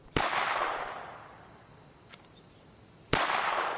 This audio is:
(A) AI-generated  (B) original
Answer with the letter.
A